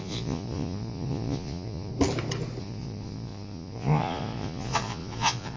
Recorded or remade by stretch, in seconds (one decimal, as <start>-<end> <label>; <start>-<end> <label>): 0.0-1.9 remade; 1.9-2.6 recorded; 2.6-5.6 remade